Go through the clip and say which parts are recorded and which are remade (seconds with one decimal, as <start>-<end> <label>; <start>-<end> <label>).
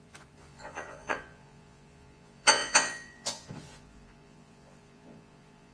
0.0-5.7 remade